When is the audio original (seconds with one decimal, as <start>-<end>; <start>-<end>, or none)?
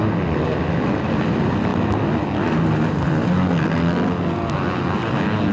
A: 0.0-5.5